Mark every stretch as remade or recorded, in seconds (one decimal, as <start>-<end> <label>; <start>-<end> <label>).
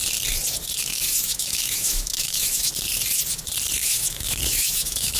0.0-0.9 recorded; 0.9-2.7 remade; 2.7-3.8 recorded; 3.8-5.2 remade